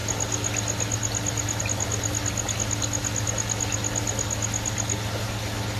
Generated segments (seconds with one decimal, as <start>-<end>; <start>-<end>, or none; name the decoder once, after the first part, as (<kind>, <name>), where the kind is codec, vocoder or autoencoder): none